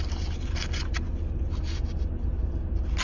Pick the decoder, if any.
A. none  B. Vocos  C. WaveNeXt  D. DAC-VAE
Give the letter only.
A